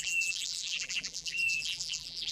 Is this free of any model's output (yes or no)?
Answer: no